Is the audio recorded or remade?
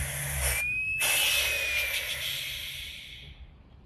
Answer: recorded